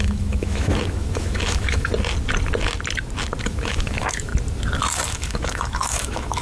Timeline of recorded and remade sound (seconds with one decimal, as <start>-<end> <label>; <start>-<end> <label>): 0.0-1.9 remade; 1.9-3.4 recorded; 3.4-4.3 remade; 4.3-4.9 recorded; 4.9-6.4 remade